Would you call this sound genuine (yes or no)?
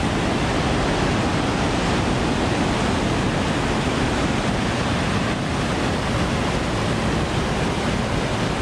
yes